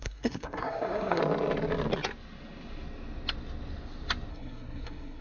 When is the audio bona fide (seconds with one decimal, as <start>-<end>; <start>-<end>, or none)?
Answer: 1.2-4.3